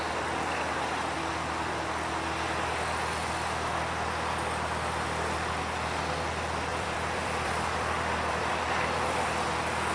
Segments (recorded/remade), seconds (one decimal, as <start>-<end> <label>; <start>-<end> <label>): 0.0-6.7 recorded; 6.7-8.5 remade; 8.5-9.9 recorded